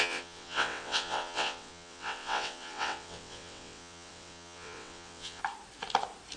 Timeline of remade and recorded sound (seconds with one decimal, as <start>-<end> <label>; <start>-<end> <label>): 0.0-5.4 remade; 5.4-6.4 recorded